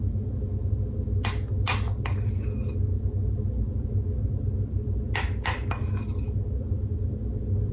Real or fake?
real